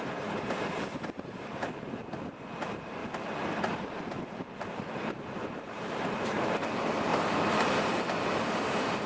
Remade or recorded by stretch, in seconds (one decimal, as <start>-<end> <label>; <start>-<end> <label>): 0.0-3.0 remade; 3.0-3.7 recorded; 3.7-9.1 remade